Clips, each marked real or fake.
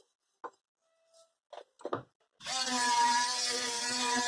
real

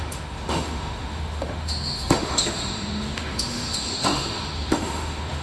fake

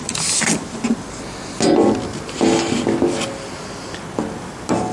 real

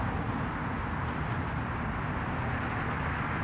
real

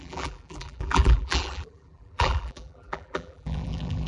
fake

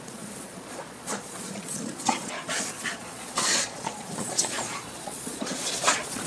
fake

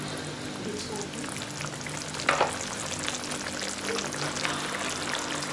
real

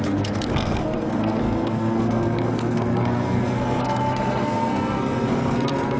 fake